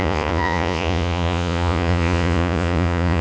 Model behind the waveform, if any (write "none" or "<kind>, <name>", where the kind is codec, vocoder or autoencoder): vocoder, Vocos